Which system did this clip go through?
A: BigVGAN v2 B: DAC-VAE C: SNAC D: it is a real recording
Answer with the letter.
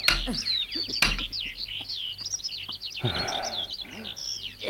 D